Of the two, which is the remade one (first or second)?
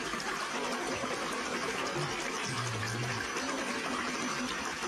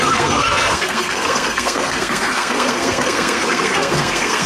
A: second